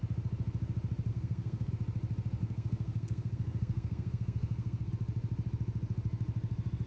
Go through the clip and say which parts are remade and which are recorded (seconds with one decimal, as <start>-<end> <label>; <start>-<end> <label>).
0.0-1.1 recorded; 1.1-1.7 remade; 1.7-2.4 recorded; 2.4-4.9 remade; 4.9-6.9 recorded